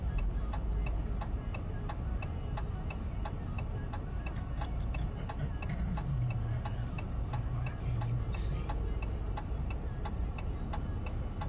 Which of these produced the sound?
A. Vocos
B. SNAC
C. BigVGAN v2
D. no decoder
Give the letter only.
D